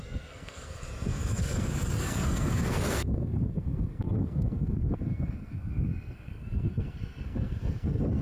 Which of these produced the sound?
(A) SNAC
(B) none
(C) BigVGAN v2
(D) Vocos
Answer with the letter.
A